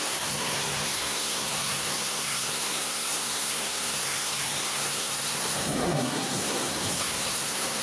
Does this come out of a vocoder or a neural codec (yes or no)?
yes